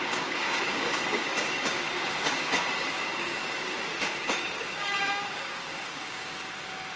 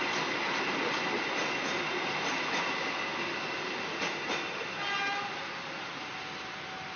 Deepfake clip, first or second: first